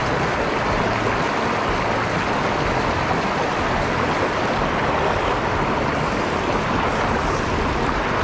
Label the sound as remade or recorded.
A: recorded